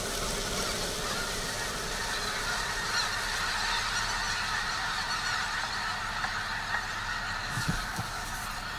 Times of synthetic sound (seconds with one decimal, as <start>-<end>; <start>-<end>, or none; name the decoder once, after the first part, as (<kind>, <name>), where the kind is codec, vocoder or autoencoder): 7.4-8.3 (codec, DAC)

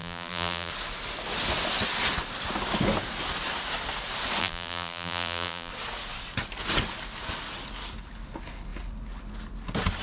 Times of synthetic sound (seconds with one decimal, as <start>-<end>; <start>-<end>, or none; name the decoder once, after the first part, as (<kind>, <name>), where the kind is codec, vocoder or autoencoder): 0.0-0.7 (vocoder, BigVGAN v2); 4.4-5.7

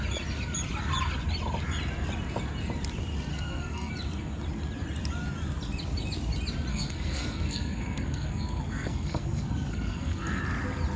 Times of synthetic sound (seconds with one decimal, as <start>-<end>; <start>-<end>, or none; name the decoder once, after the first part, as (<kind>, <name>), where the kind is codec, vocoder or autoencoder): 3.3-3.9 (codec, SNAC); 6.7-10.4

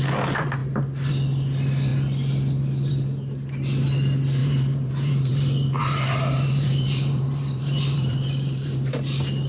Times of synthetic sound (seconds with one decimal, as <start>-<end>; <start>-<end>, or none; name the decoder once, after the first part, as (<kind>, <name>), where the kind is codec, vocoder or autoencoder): 4.4-8.9 (vocoder, BigVGAN v2)

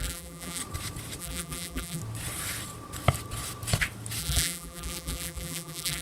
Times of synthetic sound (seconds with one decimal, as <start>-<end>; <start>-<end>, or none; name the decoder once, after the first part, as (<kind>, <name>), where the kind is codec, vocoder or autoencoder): 0.0-0.6 (vocoder, BigVGAN v2); 1.2-2.0; 4.2-6.0